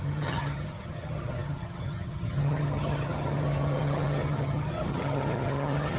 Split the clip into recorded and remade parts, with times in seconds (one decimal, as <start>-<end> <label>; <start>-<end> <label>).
0.0-6.0 remade